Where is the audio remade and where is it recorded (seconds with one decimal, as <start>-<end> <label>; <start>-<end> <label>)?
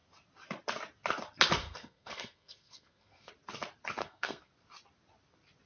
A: 0.0-1.6 recorded; 1.6-3.3 remade; 3.3-4.0 recorded; 4.0-4.5 remade; 4.5-5.7 recorded